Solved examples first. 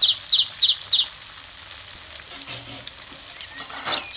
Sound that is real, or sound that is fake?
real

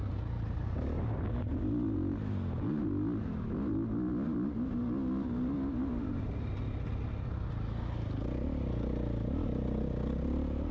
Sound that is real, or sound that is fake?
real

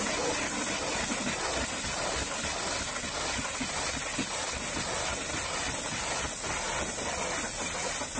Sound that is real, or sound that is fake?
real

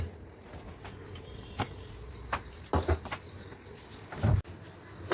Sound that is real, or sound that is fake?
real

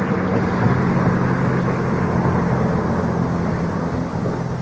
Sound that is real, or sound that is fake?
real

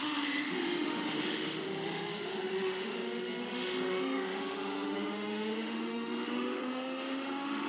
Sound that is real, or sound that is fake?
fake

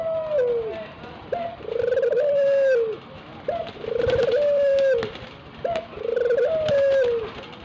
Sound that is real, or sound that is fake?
real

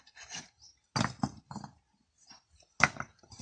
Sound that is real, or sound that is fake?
real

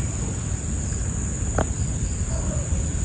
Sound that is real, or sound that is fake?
real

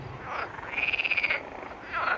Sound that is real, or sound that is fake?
real